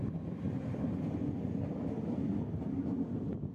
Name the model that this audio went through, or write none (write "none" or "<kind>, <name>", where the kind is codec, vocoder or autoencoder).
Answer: none